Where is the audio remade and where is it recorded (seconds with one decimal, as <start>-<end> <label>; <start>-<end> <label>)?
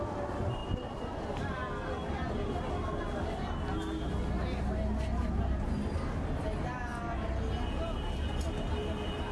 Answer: 0.0-9.3 recorded